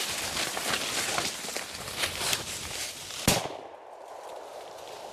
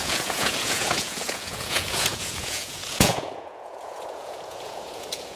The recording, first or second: first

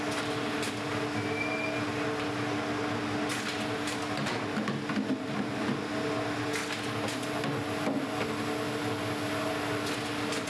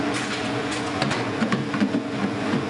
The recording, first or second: first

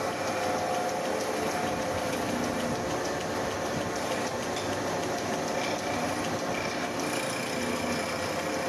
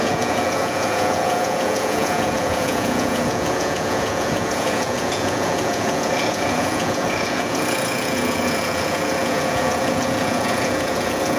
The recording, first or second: first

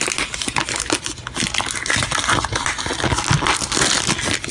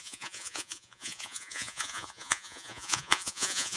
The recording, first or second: first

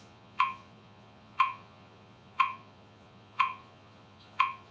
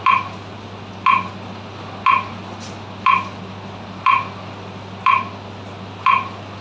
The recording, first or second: second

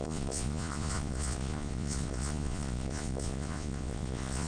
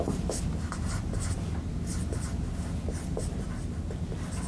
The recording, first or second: second